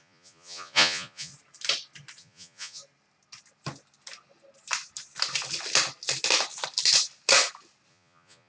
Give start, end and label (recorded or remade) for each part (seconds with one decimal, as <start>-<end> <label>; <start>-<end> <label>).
0.0-1.3 remade; 1.3-2.2 recorded; 2.2-2.8 remade; 2.8-7.9 recorded; 7.9-8.5 remade